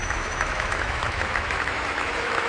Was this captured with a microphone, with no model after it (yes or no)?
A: no